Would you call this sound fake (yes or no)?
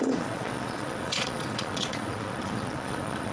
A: yes